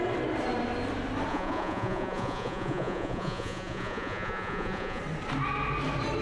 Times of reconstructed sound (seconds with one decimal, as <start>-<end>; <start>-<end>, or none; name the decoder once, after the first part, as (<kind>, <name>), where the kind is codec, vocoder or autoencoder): 1.3-5.0 (vocoder, Vocos)